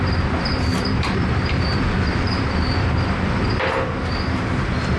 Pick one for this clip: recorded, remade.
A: remade